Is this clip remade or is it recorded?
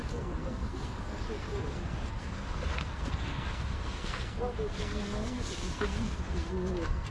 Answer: remade